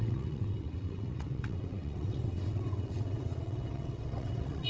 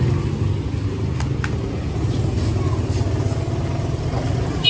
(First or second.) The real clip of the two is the second